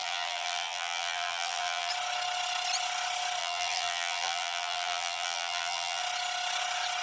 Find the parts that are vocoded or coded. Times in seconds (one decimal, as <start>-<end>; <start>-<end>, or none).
0.0-1.9; 3.4-6.0